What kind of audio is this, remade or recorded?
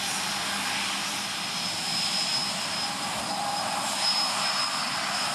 recorded